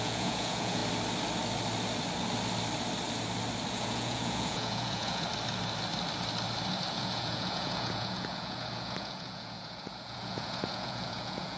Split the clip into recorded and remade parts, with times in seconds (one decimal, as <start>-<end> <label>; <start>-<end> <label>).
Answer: 0.0-0.8 remade; 0.8-3.7 recorded; 3.7-5.3 remade; 5.3-6.9 recorded; 6.9-11.6 remade